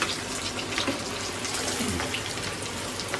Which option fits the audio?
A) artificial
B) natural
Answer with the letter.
B